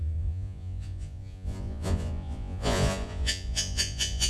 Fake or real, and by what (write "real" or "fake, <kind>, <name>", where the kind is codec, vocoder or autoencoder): fake, vocoder, Vocos